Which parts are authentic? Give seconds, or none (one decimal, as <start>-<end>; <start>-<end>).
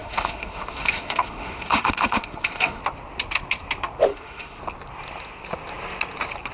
2.8-4.1; 4.6-6.5